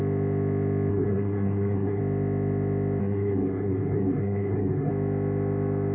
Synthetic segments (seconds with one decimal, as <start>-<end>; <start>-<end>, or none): 0.9-2.0; 3.0-4.9